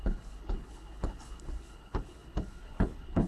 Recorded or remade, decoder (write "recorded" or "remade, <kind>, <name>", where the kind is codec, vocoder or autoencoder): remade, codec, HILCodec